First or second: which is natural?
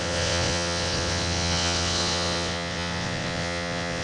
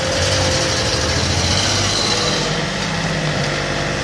second